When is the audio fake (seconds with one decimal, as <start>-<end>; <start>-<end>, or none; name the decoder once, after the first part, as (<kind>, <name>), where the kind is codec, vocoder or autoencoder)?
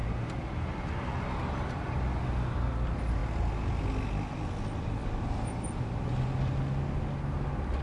none